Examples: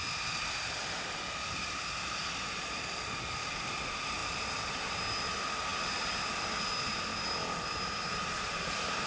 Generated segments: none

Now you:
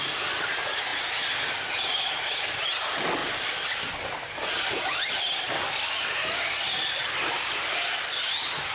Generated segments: none